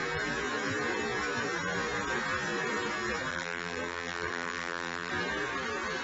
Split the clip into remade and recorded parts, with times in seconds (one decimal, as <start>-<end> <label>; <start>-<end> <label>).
0.0-3.3 recorded; 3.3-5.1 remade; 5.1-6.0 recorded